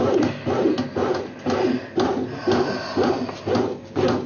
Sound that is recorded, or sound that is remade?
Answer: recorded